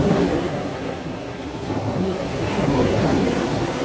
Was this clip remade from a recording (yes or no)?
yes